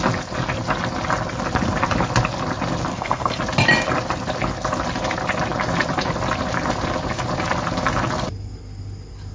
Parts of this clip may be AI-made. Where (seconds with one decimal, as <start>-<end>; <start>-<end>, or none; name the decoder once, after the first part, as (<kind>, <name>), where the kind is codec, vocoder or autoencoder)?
2.9-3.4 (codec, SNAC)